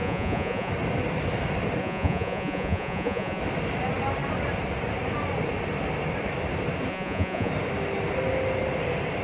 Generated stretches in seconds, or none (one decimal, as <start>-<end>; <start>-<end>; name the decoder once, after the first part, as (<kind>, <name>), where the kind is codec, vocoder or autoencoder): 0.0-0.7 (vocoder, Vocos); 1.8-3.4; 6.9-7.5